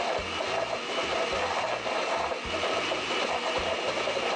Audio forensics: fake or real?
real